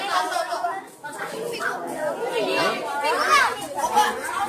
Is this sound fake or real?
real